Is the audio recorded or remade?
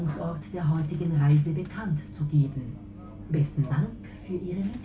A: recorded